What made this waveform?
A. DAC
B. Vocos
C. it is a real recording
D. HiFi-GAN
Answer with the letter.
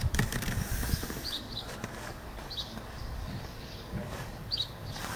A